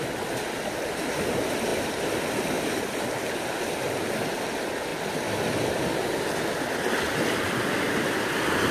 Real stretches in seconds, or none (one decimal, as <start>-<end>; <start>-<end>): 0.0-8.7